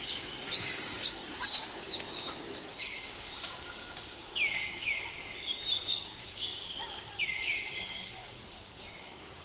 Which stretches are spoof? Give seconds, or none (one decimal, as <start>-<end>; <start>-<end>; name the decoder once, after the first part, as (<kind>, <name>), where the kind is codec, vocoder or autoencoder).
0.0-9.4 (codec, DAC)